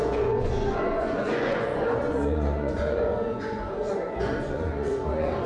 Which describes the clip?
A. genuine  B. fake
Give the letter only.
B